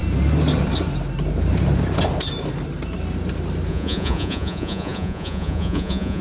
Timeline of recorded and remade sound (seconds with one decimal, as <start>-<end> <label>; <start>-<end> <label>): 0.0-3.7 recorded; 3.7-6.2 remade